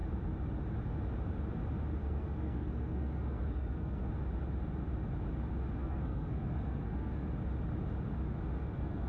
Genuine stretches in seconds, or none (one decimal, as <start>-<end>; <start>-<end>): 0.0-2.0; 4.1-5.8; 7.3-8.6